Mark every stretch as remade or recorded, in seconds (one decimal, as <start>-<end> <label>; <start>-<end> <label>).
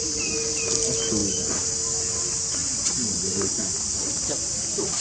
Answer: 0.0-2.6 recorded; 2.6-3.5 remade; 3.5-5.0 recorded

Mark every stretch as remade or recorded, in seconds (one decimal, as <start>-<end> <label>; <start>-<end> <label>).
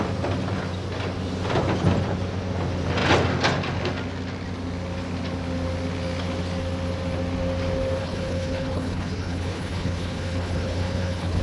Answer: 0.0-8.0 recorded; 8.0-11.4 remade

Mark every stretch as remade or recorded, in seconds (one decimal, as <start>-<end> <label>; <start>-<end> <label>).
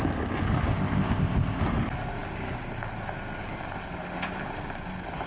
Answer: 0.0-0.7 recorded; 0.7-1.6 remade; 1.6-5.3 recorded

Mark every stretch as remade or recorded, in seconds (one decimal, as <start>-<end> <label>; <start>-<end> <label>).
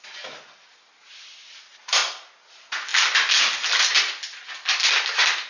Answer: 0.0-5.5 recorded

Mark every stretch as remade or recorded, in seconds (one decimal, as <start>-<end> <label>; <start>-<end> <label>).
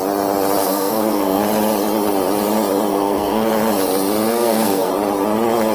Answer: 0.0-0.6 recorded; 0.6-1.4 remade; 1.4-2.9 recorded; 2.9-3.5 remade; 3.5-4.3 recorded; 4.3-4.9 remade; 4.9-5.7 recorded